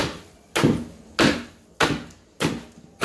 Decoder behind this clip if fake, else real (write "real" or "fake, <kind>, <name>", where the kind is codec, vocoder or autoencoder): real